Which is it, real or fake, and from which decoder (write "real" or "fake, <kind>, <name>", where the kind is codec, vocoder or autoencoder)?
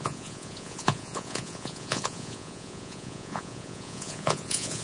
fake, vocoder, Vocos